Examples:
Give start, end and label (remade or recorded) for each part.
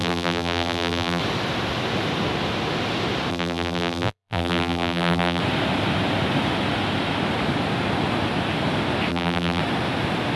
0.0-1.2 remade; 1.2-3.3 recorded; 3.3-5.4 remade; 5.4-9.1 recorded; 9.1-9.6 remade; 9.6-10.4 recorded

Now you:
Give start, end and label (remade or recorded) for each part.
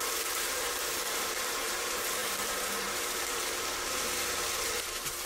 0.0-5.3 remade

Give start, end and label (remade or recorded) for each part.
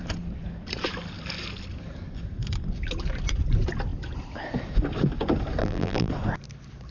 0.0-5.6 recorded; 5.6-6.1 remade; 6.1-6.9 recorded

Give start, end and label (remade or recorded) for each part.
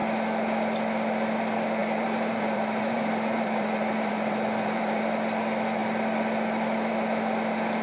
0.0-1.8 recorded; 1.8-5.0 remade; 5.0-7.8 recorded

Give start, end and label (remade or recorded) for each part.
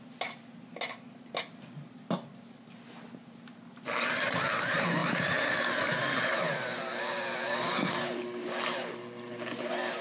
0.0-10.0 recorded